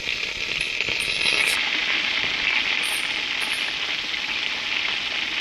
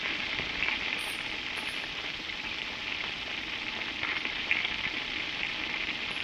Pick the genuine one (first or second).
first